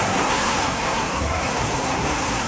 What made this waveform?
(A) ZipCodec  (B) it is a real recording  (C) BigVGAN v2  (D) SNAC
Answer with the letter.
D